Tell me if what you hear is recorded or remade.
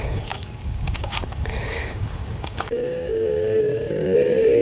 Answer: remade